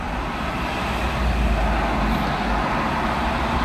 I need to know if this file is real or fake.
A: real